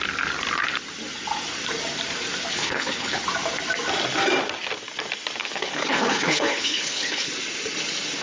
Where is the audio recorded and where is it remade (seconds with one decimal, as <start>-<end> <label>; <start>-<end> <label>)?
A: 0.0-2.5 recorded; 2.5-3.2 remade; 3.2-5.4 recorded; 5.4-7.3 remade; 7.3-8.2 recorded